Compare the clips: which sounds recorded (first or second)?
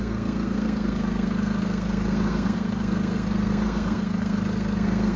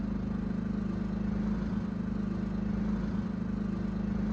second